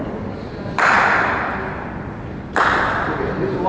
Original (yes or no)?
yes